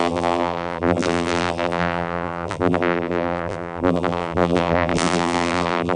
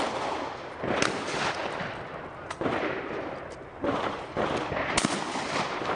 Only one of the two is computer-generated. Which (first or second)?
first